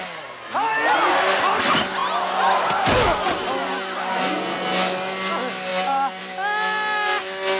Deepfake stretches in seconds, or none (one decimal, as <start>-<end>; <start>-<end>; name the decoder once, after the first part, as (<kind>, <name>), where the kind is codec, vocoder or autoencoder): none